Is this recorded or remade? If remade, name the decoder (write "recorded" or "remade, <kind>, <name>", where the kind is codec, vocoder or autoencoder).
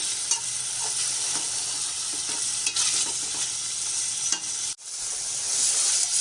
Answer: recorded